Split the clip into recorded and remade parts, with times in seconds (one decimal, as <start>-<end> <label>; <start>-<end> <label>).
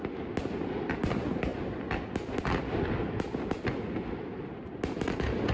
0.0-5.5 recorded